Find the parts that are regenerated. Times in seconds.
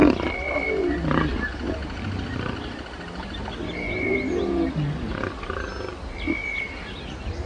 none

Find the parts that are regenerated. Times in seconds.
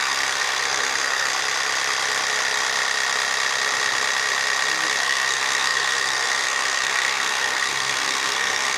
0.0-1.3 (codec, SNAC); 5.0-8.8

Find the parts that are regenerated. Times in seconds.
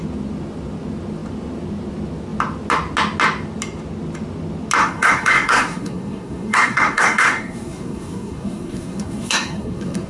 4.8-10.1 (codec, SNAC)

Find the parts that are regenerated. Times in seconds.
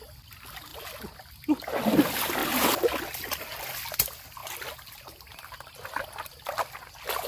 none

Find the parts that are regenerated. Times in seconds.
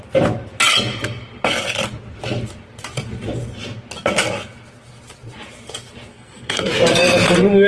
6.1-6.7 (codec, SNAC)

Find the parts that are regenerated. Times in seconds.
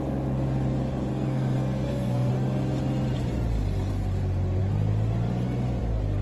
1.1-2.3 (codec, SNAC)